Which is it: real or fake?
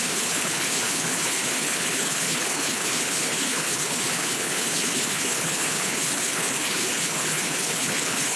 fake